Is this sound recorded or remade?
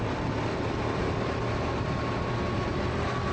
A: recorded